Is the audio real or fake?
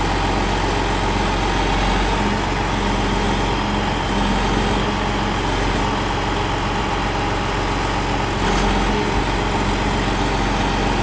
real